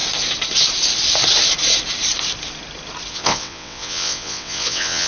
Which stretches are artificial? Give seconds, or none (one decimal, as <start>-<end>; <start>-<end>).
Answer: 3.1-5.1